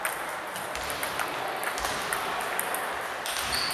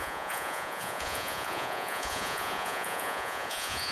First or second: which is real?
first